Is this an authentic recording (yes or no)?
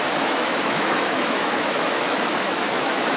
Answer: no